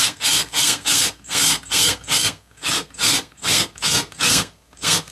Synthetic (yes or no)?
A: yes